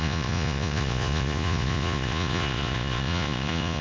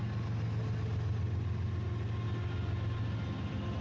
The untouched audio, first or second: second